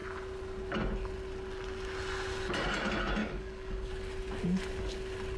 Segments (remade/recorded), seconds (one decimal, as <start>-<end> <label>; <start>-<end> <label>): 0.0-3.2 recorded; 3.2-3.9 remade; 3.9-5.4 recorded